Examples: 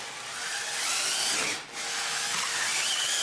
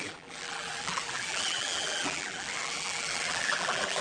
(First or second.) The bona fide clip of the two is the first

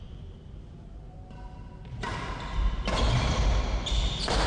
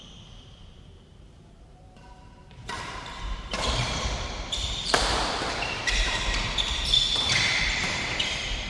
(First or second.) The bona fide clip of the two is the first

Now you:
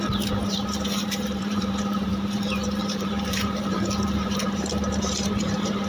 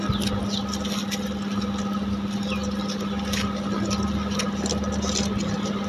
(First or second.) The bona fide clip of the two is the second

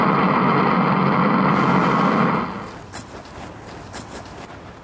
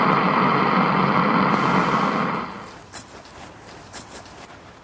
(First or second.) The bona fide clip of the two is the first